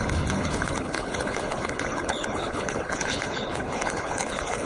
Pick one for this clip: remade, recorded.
remade